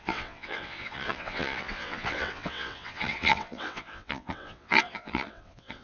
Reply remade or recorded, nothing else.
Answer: remade